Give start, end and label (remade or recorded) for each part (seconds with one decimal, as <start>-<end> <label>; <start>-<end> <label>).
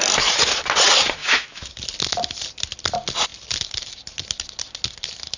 0.0-1.2 recorded; 1.2-1.7 remade; 1.7-5.4 recorded